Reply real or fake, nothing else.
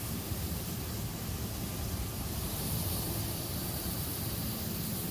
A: real